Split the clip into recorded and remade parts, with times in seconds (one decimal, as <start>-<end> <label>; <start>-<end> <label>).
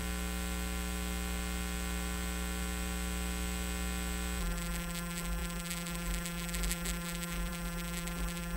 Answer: 0.0-4.4 recorded; 4.4-8.6 remade